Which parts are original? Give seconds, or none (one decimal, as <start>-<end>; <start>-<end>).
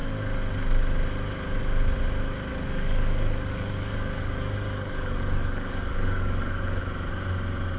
0.0-2.5; 6.8-7.8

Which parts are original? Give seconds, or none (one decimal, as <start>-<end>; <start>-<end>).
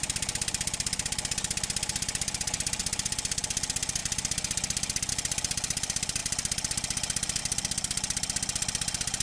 0.0-9.2